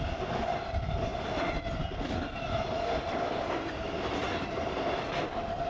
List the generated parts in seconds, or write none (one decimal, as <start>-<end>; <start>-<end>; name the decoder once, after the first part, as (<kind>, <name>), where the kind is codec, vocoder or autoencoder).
none

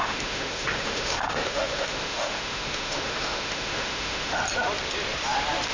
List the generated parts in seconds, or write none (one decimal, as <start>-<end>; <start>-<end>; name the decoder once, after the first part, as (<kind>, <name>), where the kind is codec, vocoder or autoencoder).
0.0-4.4 (autoencoder, DAC-VAE)

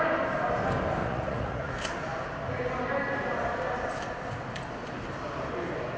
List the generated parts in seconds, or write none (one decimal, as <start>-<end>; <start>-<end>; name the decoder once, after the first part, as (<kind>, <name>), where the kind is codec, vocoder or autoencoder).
1.0-1.7 (vocoder, Vocos)

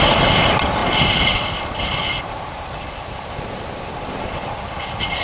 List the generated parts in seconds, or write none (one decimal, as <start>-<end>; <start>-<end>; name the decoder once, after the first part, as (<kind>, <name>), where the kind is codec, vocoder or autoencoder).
0.8-3.3 (vocoder, BigVGAN v2)

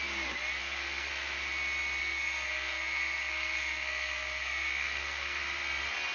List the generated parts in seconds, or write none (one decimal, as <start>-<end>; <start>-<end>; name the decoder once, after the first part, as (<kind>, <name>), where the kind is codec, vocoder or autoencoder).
0.6-1.1 (codec, SNAC); 2.0-5.4